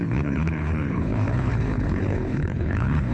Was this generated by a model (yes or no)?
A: yes